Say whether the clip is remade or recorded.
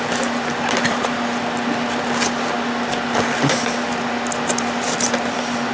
recorded